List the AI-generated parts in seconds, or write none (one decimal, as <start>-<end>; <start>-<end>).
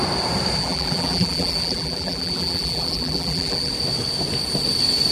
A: 0.6-3.7